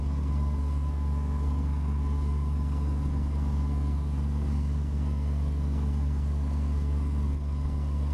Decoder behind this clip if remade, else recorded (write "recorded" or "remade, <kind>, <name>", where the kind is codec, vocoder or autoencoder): remade, codec, SNAC